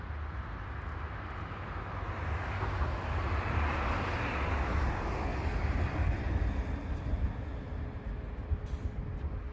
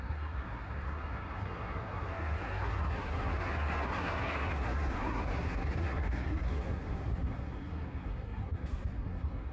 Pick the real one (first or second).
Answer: first